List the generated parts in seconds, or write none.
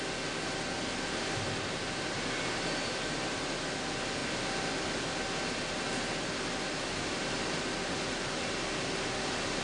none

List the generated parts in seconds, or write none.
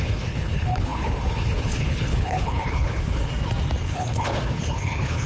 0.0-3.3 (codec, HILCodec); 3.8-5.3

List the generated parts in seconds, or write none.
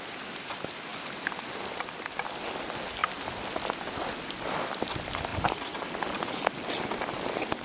none